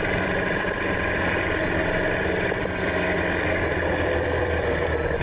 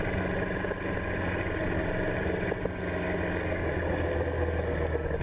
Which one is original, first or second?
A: second